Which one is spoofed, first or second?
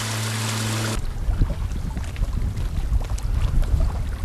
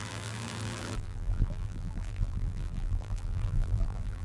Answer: second